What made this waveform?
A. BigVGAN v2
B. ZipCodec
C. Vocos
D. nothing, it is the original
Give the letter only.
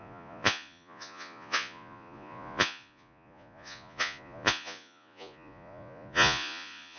C